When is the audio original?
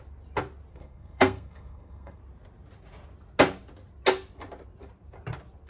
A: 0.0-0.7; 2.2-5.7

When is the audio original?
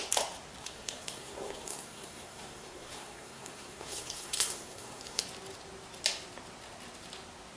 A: 0.0-0.6; 5.2-7.6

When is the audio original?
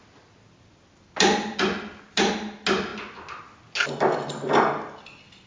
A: 1.6-5.5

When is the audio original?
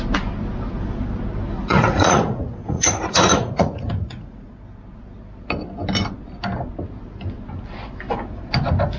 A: 0.0-1.7; 4.5-9.0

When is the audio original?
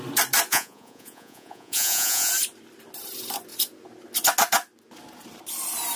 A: 0.0-0.5; 2.3-6.0